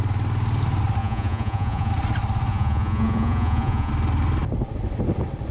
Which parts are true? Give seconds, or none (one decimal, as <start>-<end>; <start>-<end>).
0.0-1.0; 1.9-2.5; 3.9-5.5